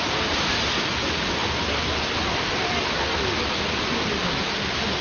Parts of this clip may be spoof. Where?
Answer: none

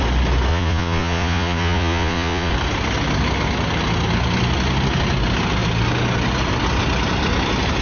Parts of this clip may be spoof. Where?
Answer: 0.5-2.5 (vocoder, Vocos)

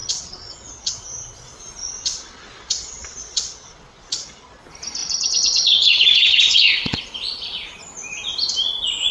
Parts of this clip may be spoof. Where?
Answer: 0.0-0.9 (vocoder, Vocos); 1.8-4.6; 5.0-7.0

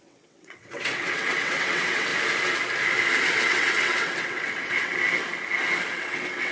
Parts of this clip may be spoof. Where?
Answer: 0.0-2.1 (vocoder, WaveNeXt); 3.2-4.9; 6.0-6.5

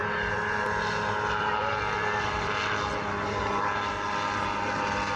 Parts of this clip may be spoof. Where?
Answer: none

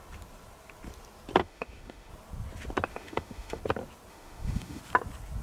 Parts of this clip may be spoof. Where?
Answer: 1.4-2.1 (autoencoder, DAC-VAE); 2.9-3.6; 4.1-4.8

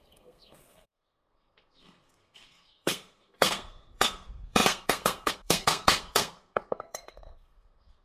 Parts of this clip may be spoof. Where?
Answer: 0.0-8.0 (codec, SNAC)